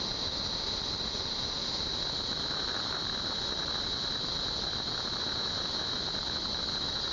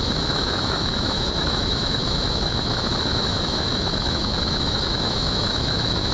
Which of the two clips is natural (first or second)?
first